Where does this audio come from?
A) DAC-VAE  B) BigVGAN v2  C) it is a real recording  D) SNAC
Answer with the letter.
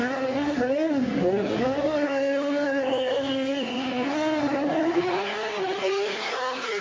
D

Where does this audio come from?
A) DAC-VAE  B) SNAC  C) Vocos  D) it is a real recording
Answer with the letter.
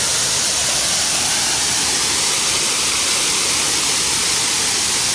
D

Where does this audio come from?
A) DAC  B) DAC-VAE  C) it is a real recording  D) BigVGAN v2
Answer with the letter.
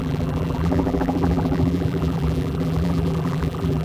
D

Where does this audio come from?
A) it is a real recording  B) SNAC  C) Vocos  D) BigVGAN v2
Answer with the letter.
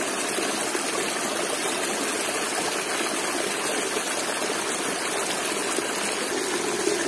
A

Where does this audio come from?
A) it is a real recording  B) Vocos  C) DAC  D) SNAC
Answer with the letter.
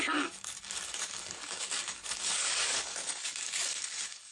C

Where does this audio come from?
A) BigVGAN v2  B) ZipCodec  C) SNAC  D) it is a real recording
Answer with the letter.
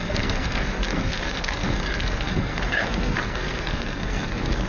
C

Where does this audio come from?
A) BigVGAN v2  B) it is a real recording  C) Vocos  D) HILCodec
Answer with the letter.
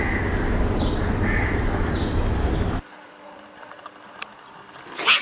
B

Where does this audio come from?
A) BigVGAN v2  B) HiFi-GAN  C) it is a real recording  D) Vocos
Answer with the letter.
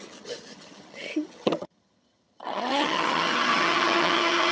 B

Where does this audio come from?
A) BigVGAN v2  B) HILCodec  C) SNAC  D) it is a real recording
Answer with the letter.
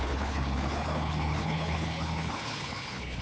B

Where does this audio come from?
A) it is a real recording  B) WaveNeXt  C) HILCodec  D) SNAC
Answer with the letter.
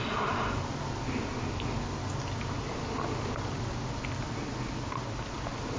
A